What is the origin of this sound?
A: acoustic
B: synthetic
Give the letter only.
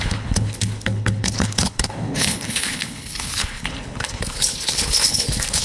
B